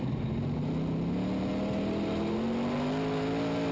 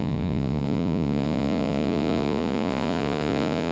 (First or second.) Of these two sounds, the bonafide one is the first